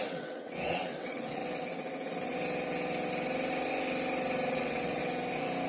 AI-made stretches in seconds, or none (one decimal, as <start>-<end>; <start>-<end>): 0.0-1.4; 4.5-5.0